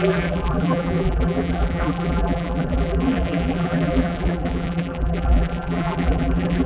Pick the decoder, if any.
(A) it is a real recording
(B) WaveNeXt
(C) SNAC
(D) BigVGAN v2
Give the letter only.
D